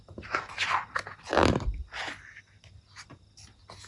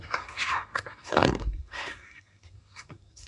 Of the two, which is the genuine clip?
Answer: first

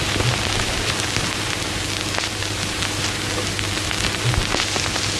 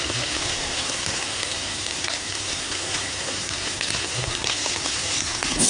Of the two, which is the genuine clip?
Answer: first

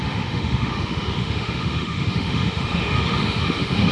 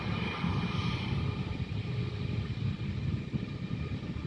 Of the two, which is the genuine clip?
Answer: second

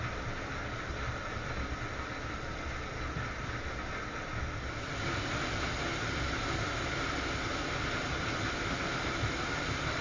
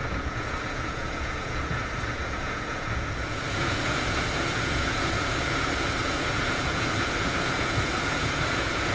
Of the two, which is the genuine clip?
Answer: first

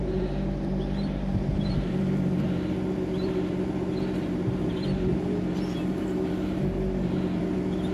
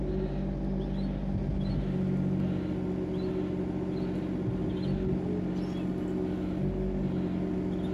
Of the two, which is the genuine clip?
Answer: second